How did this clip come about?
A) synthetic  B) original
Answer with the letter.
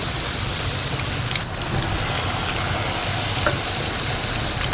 B